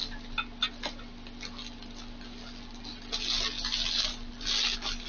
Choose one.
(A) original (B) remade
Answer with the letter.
A